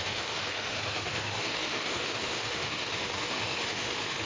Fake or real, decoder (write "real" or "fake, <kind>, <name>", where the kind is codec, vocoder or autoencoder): fake, autoencoder, DAC-VAE